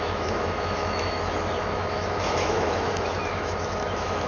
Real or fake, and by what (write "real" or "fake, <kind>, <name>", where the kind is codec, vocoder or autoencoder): fake, autoencoder, DAC-VAE